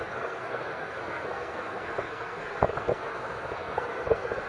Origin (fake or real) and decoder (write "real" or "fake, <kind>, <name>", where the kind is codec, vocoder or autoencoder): fake, codec, SNAC